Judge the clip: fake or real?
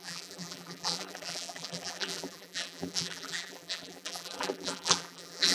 fake